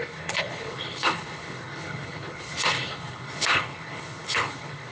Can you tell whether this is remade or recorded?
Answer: remade